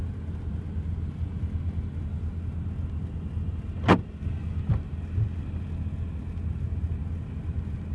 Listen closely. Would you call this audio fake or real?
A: real